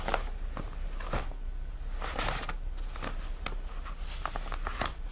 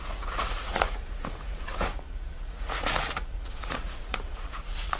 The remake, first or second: second